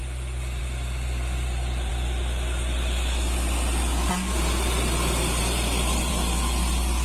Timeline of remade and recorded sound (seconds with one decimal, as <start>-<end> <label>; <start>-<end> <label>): 0.0-7.0 recorded

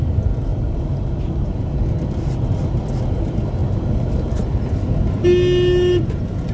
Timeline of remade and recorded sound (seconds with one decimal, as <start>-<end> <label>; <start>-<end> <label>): 0.0-0.5 recorded; 0.5-1.2 remade; 1.2-3.6 recorded; 3.6-4.4 remade; 4.4-6.5 recorded

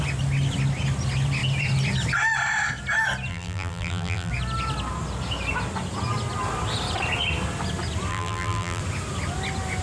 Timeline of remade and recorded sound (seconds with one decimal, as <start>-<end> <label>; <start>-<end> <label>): 0.0-3.3 recorded; 3.3-4.3 remade; 4.3-8.1 recorded; 8.1-8.8 remade; 8.8-9.8 recorded

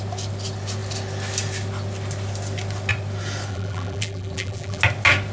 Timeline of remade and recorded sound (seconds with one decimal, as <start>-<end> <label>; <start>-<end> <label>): 0.0-3.5 recorded; 3.5-4.8 remade; 4.8-5.3 recorded

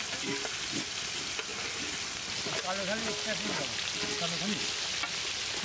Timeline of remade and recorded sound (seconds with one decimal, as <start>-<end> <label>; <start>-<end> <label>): 0.0-5.6 recorded

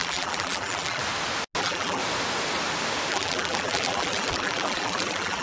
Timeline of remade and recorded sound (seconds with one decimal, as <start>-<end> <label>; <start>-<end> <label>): 0.0-1.0 remade; 1.0-1.6 recorded; 1.6-2.0 remade; 2.0-3.1 recorded; 3.1-5.4 remade

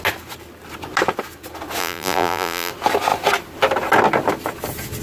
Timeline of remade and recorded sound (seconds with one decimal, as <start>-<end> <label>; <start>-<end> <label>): 0.0-1.8 recorded; 1.8-2.7 remade; 2.7-5.0 recorded